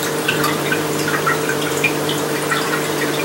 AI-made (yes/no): yes